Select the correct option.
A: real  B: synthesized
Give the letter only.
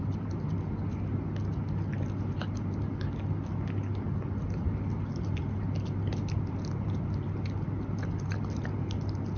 A